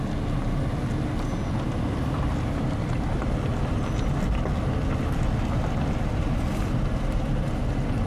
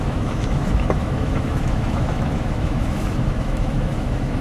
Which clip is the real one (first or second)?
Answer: first